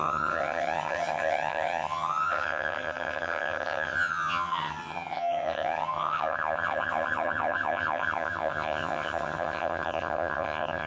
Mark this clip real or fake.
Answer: fake